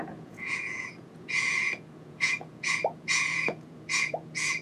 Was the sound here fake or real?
fake